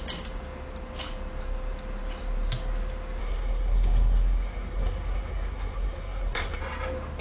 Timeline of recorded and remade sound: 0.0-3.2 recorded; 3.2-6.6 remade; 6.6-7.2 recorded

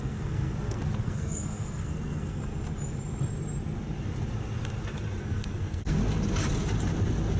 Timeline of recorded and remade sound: 0.0-2.4 remade; 2.4-5.2 recorded; 5.2-6.0 remade; 6.0-7.4 recorded

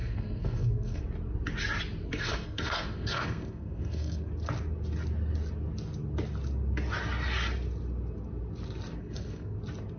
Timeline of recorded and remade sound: 0.0-1.0 remade; 1.0-2.0 recorded; 2.0-4.3 remade; 4.3-9.0 recorded; 9.0-9.6 remade; 9.6-10.0 recorded